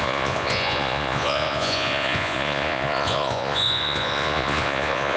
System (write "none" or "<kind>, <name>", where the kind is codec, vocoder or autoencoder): vocoder, Vocos